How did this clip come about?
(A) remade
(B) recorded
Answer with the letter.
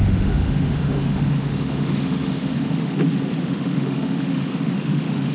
A